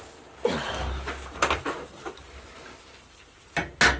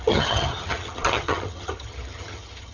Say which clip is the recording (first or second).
first